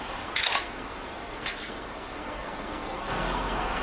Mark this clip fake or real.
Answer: fake